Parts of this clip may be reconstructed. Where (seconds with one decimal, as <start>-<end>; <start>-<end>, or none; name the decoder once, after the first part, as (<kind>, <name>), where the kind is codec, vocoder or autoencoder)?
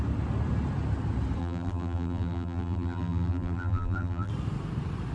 1.4-4.3 (vocoder, BigVGAN v2)